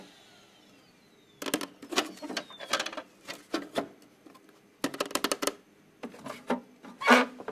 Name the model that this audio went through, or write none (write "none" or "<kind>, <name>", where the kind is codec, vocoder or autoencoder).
none